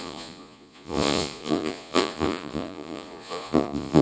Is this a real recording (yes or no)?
no